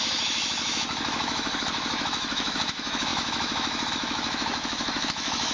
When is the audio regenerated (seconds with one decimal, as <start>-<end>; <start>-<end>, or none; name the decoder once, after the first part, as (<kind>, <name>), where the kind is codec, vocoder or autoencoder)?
0.0-5.5 (autoencoder, DAC-VAE)